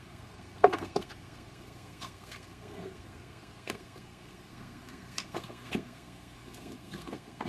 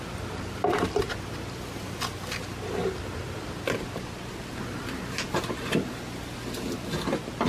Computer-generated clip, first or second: first